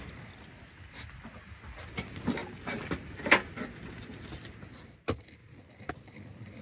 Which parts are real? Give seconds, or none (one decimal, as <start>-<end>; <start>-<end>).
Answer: 0.0-6.6